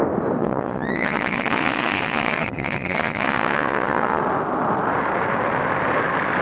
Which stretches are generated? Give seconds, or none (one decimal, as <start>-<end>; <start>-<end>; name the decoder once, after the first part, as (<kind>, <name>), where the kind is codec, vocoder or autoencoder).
0.4-4.2 (vocoder, Vocos)